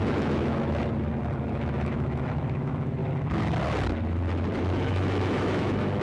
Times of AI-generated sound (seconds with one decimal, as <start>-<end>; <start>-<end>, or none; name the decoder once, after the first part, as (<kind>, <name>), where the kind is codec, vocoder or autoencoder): 0.0-0.8 (autoencoder, DAC-VAE); 1.5-3.0; 4.6-6.0

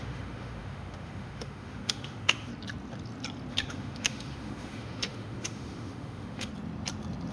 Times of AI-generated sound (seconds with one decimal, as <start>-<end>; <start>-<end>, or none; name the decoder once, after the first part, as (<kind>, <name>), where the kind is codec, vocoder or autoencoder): 0.0-2.5 (autoencoder, DAC-VAE); 3.5-6.5

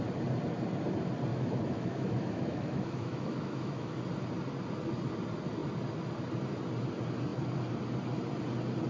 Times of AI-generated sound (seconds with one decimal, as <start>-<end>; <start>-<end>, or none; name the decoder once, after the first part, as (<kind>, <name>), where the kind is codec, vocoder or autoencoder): 1.3-4.0 (autoencoder, DAC-VAE)

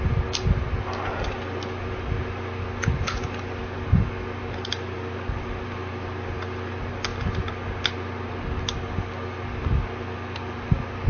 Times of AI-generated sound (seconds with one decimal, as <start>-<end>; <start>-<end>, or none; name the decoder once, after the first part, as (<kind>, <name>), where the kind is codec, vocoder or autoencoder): none

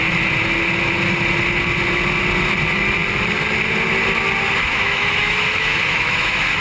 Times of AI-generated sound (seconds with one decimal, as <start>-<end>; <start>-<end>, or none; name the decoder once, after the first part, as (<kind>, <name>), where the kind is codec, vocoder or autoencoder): 4.6-6.6 (autoencoder, DAC-VAE)